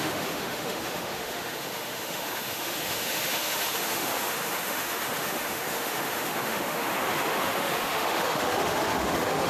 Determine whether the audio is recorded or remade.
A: remade